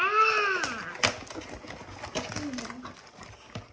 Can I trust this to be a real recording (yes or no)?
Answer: yes